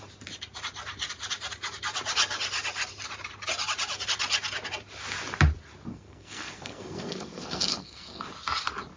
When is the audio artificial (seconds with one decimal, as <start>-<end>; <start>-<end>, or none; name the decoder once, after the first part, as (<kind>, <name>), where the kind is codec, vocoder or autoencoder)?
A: 5.9-8.3 (codec, SNAC)